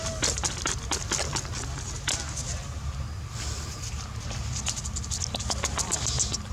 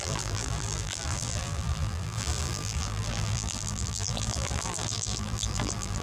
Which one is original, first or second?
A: first